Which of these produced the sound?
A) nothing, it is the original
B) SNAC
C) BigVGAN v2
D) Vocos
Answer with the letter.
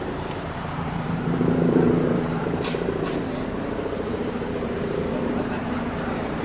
C